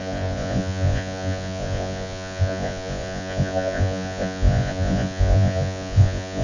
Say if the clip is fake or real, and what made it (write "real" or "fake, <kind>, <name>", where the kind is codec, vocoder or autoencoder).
fake, vocoder, Vocos